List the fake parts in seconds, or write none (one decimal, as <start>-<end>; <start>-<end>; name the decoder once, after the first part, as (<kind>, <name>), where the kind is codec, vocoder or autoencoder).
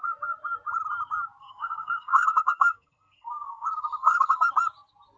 1.4-4.5 (codec, SNAC)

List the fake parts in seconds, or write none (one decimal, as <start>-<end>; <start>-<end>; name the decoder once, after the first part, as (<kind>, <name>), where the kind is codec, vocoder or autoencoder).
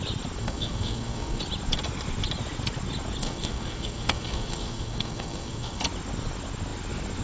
0.4-1.4 (codec, SNAC); 3.2-5.8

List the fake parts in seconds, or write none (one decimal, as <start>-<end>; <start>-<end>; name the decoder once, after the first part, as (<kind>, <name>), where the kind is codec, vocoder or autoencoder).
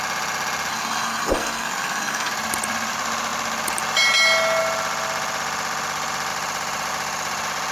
0.7-2.3 (codec, SNAC)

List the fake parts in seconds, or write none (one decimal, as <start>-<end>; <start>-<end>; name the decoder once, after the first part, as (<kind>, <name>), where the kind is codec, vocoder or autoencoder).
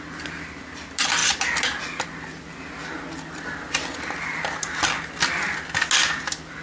none